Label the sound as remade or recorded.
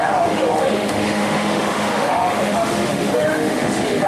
remade